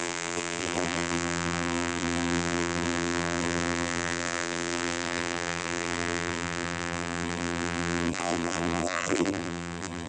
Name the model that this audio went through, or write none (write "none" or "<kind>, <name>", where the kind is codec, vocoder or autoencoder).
vocoder, BigVGAN v2